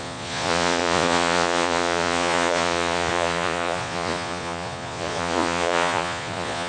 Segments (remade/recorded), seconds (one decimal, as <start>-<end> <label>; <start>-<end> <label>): 0.0-6.7 remade